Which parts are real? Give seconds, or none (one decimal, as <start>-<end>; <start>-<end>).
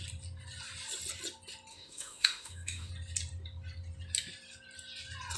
0.0-1.7; 2.9-5.4